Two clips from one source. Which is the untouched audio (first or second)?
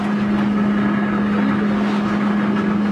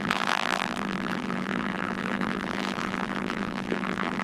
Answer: first